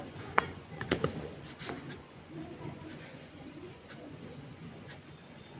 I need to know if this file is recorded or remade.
remade